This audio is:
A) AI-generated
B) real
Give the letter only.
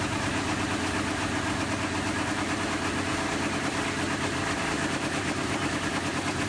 B